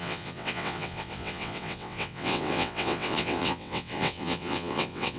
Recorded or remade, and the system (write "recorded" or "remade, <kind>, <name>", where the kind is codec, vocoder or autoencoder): remade, vocoder, WaveNeXt